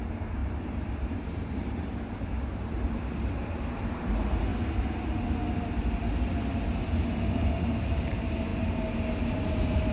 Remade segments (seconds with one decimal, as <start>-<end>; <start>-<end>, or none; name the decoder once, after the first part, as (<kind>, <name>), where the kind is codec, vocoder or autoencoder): 0.0-4.5 (vocoder, BigVGAN v2); 7.6-8.5; 9.3-9.9